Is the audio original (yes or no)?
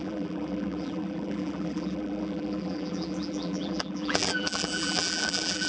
no